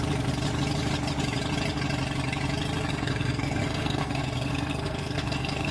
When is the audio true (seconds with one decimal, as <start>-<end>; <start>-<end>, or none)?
0.0-2.9